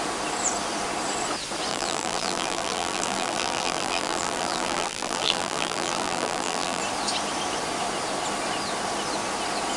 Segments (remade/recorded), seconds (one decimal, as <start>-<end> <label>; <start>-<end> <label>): 0.0-1.7 recorded; 1.7-6.8 remade; 6.8-9.8 recorded